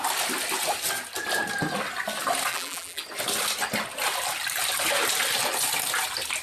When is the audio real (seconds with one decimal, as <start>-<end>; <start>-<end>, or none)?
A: 0.0-2.5; 3.0-6.4